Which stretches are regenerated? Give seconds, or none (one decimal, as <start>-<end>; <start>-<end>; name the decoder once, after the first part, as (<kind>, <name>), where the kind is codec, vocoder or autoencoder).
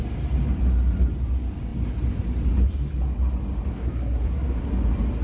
3.7-4.7 (codec, SNAC)